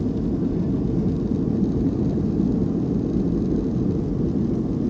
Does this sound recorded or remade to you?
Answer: recorded